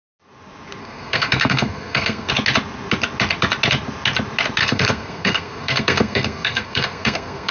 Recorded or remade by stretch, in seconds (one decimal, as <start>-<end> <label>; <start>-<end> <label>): 0.0-0.8 recorded; 0.8-2.3 remade; 2.3-4.6 recorded; 4.6-7.5 remade